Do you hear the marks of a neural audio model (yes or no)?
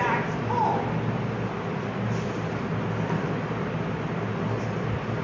no